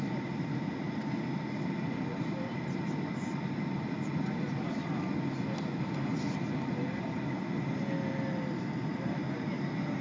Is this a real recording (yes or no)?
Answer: yes